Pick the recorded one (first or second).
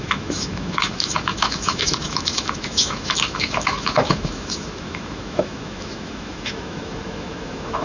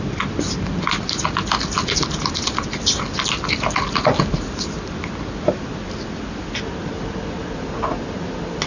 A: second